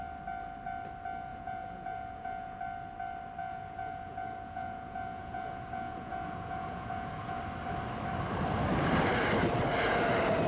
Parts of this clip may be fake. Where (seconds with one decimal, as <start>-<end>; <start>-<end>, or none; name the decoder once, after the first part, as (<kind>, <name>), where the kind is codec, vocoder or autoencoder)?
1.3-2.6 (vocoder, Vocos); 3.4-7.4